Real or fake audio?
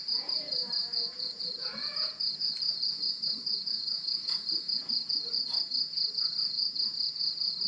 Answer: fake